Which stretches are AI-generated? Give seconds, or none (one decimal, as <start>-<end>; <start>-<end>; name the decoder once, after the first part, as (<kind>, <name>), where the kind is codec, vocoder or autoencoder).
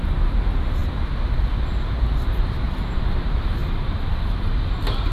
0.0-0.8 (vocoder, BigVGAN v2); 1.9-3.6; 4.4-5.1